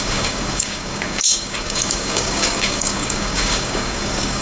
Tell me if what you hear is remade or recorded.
remade